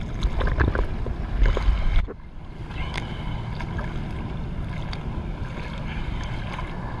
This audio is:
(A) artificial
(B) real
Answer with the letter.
B